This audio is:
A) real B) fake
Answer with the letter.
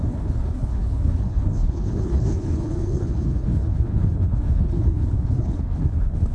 B